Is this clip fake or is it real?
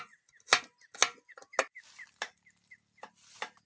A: real